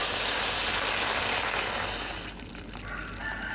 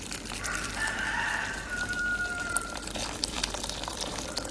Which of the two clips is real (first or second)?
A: first